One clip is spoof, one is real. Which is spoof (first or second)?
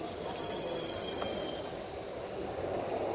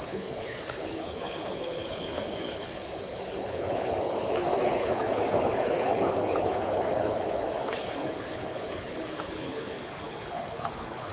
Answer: second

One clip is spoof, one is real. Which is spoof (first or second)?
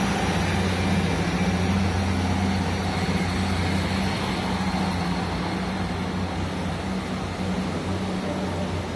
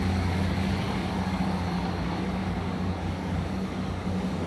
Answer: second